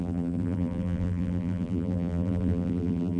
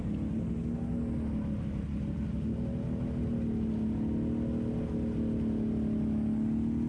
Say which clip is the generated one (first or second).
first